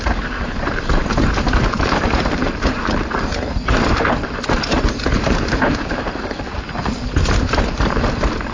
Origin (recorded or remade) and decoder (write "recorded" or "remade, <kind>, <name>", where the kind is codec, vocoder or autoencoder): remade, vocoder, BigVGAN v2